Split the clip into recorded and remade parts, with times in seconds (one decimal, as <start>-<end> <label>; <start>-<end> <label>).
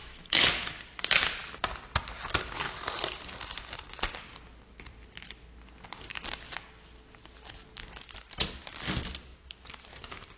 0.0-0.7 remade; 0.7-10.4 recorded